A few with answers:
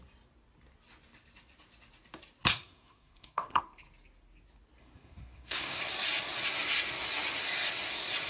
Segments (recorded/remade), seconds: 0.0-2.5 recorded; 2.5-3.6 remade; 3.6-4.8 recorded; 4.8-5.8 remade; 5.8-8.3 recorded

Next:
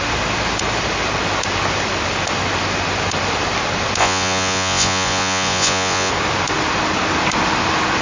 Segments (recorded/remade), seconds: 0.0-4.0 recorded; 4.0-6.1 remade; 6.1-8.0 recorded